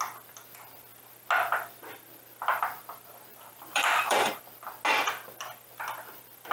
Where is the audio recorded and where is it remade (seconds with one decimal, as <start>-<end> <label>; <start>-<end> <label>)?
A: 0.0-3.3 recorded; 3.3-4.4 remade; 4.4-6.5 recorded